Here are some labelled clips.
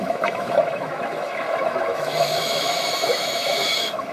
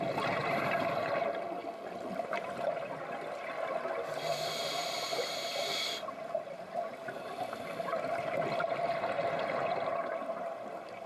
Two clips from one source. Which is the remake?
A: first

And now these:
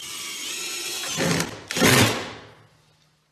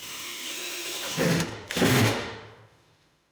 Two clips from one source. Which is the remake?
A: second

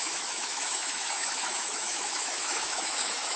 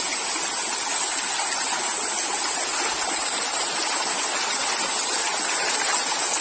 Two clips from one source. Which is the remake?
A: first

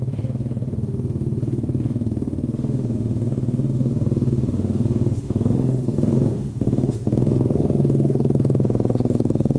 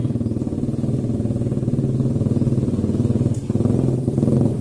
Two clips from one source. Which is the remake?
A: first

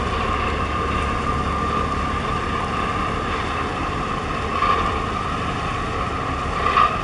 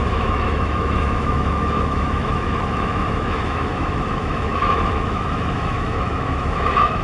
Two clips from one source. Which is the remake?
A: second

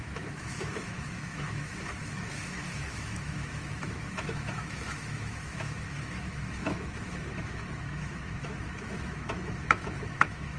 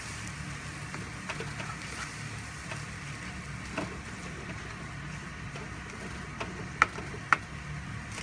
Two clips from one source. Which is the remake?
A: first